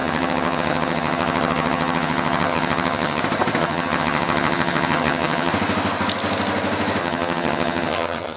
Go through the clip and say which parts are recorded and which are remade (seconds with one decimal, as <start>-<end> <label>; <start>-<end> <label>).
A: 0.0-3.2 remade; 3.2-3.6 recorded; 3.6-5.5 remade; 5.5-7.0 recorded; 7.0-8.4 remade